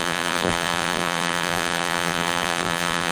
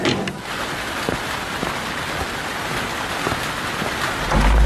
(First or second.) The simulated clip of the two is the first